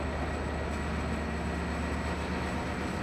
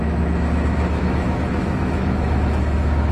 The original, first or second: first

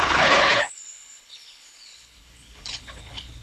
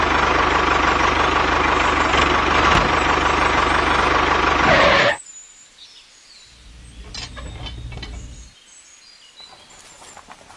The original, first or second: second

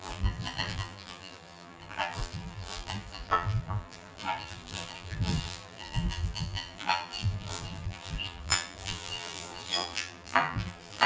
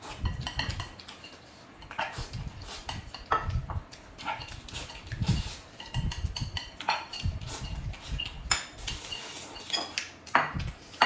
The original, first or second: second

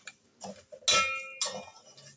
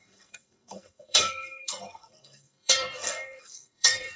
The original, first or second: first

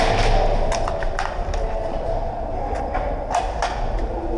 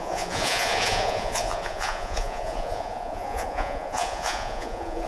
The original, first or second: first